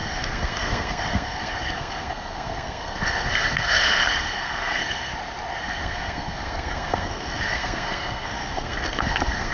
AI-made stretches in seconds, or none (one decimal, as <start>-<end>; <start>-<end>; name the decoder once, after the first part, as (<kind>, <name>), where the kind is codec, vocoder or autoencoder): 0.0-5.1 (codec, SNAC); 5.6-9.5